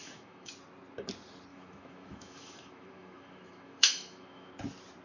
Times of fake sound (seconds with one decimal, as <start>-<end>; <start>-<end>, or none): 0.0-0.5; 1.5-4.5